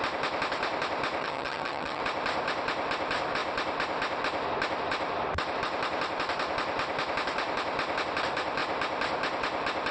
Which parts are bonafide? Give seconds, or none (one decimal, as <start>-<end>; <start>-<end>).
0.0-1.2; 2.0-9.9